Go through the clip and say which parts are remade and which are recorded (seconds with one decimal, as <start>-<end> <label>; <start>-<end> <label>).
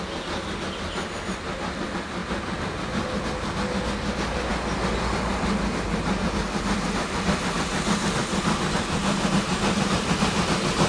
0.0-10.9 recorded